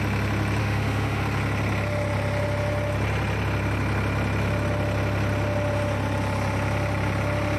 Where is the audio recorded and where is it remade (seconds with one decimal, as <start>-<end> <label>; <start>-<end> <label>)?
0.0-0.6 recorded; 0.6-1.2 remade; 1.2-7.6 recorded